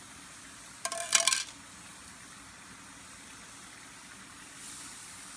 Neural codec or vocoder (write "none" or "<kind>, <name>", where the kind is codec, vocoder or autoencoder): none